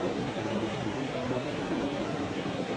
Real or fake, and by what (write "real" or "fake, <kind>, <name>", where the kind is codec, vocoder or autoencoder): fake, codec, SNAC